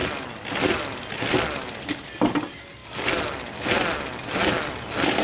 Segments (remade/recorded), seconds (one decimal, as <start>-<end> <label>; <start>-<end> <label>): 0.0-5.2 recorded

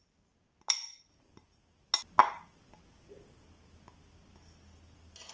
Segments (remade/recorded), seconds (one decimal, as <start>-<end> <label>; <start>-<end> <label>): 0.0-5.3 recorded